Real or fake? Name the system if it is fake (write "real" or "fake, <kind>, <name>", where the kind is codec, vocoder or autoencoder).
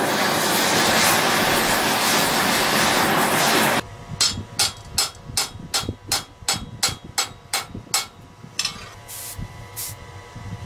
real